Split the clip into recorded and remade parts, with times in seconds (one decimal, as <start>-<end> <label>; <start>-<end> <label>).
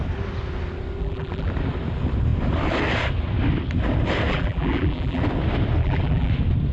0.0-1.0 recorded; 1.0-1.5 remade; 1.5-4.3 recorded; 4.3-5.2 remade; 5.2-5.8 recorded; 5.8-6.3 remade; 6.3-6.7 recorded